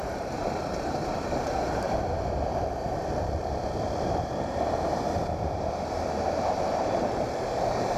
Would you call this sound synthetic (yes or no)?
yes